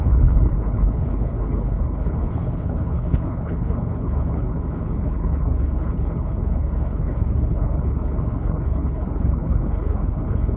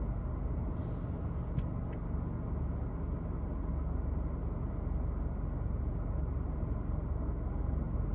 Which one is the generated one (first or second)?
first